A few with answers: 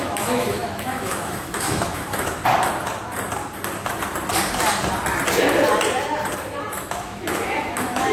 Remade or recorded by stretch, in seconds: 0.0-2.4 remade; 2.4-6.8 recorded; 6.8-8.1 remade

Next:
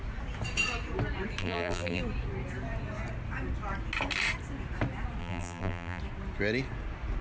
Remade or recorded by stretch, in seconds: 0.0-1.4 recorded; 1.4-2.0 remade; 2.0-5.2 recorded; 5.2-6.0 remade; 6.0-7.2 recorded

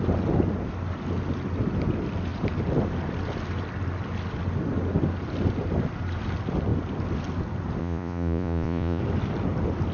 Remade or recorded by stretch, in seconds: 0.0-7.8 recorded; 7.8-9.0 remade; 9.0-9.9 recorded

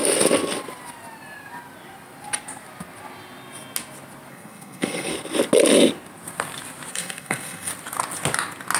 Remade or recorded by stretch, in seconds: 0.0-4.3 recorded; 4.3-5.1 remade; 5.1-6.9 recorded; 6.9-7.7 remade; 7.7-8.8 recorded

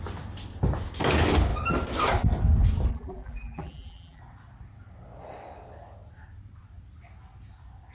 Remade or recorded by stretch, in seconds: 0.0-2.9 recorded; 2.9-4.2 remade; 4.2-7.9 recorded